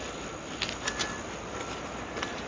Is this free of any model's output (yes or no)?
yes